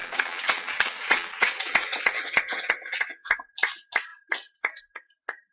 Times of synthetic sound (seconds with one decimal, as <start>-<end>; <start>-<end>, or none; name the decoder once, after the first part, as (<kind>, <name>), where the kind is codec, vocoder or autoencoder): 0.0-3.3 (vocoder, WaveNeXt)